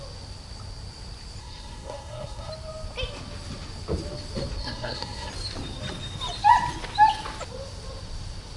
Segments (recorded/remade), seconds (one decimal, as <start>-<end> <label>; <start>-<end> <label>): 0.0-1.4 recorded; 1.4-2.5 remade; 2.5-4.6 recorded; 4.6-5.3 remade; 5.3-8.6 recorded

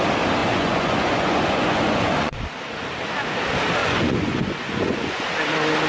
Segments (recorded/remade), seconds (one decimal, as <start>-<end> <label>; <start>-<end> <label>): 0.0-0.4 recorded; 0.4-2.4 remade; 2.4-3.8 recorded; 3.8-5.3 remade; 5.3-5.9 recorded

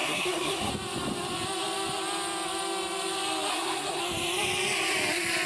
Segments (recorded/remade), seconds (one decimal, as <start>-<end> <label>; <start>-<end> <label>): 0.0-0.7 remade; 0.7-3.5 recorded; 3.5-4.0 remade; 4.0-5.5 recorded